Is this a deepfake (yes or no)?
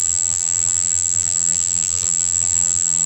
yes